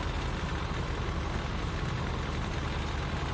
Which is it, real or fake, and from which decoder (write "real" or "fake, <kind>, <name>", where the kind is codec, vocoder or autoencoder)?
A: real